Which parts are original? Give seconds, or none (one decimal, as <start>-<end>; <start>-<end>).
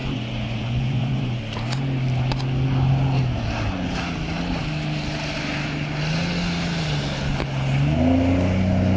1.4-9.0